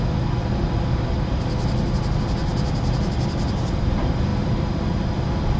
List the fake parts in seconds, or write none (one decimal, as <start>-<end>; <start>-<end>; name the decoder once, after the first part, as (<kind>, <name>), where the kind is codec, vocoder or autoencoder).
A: none